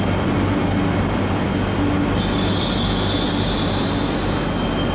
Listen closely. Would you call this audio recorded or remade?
recorded